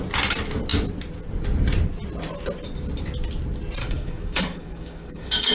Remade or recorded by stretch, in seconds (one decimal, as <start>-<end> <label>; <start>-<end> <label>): 0.0-3.8 recorded; 3.8-5.5 remade